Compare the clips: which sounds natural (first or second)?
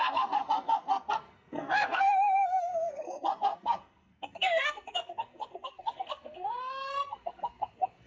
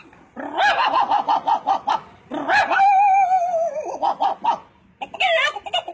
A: second